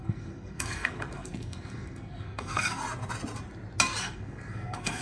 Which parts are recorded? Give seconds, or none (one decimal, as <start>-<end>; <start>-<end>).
2.8-4.0